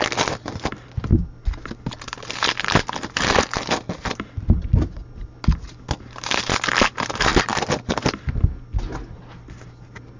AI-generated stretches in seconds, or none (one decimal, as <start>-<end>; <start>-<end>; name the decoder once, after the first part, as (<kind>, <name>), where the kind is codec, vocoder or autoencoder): none